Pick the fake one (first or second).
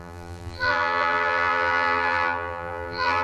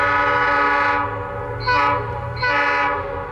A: first